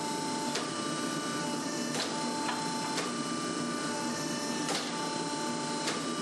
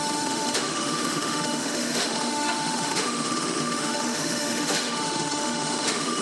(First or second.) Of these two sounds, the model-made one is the second